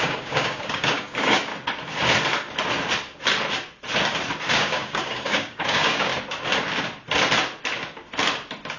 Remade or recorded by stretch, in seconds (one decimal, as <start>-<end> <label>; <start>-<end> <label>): 0.0-1.5 remade; 1.5-4.5 recorded; 4.5-6.1 remade; 6.1-8.8 recorded